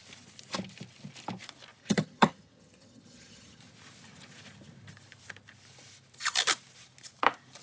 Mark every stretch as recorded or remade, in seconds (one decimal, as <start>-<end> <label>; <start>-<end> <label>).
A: 0.0-1.8 recorded; 1.8-3.6 remade; 3.6-7.6 recorded